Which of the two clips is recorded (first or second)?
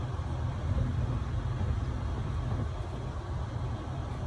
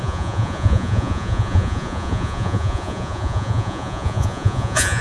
first